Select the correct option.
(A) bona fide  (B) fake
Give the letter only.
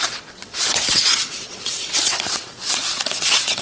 B